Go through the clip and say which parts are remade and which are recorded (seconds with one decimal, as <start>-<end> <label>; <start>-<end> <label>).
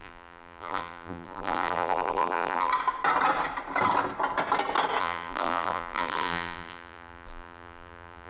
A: 0.0-2.7 remade; 2.7-5.0 recorded; 5.0-8.3 remade